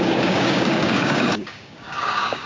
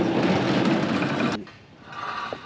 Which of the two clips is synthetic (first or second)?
first